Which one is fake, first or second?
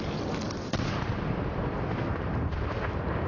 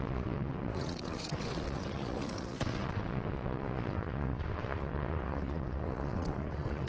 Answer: second